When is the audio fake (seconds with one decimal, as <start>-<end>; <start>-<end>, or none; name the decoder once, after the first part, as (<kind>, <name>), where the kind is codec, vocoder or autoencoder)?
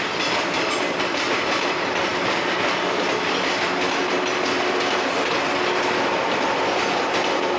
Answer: none